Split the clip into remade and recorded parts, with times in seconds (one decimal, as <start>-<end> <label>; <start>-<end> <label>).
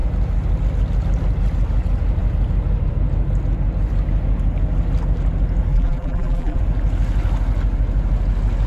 0.0-5.7 recorded; 5.7-6.6 remade; 6.6-8.7 recorded